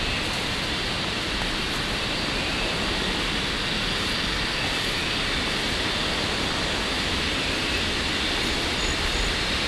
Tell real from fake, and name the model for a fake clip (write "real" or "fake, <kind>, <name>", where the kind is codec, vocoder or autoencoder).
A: real